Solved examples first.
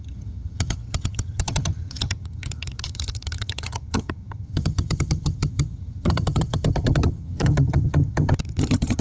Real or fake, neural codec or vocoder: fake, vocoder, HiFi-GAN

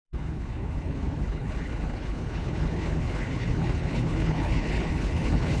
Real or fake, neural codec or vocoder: fake, codec, HILCodec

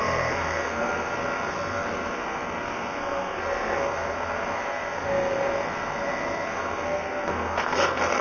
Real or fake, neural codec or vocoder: fake, codec, SNAC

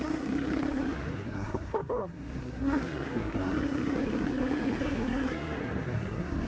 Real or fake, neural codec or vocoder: fake, codec, SNAC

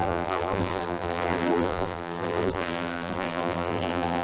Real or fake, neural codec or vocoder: fake, vocoder, BigVGAN v2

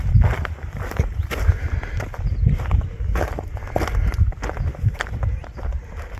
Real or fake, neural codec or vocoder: real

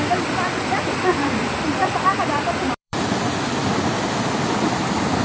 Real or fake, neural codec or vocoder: fake, vocoder, BigVGAN v2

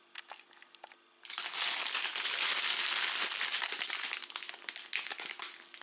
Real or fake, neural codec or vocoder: real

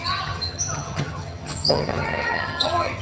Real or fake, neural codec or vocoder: fake, vocoder, HiFi-GAN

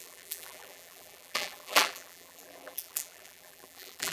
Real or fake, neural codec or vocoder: fake, vocoder, BigVGAN v2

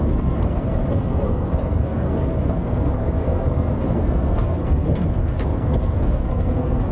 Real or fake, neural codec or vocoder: fake, codec, SNAC